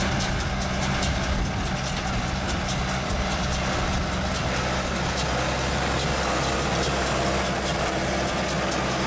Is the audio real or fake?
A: real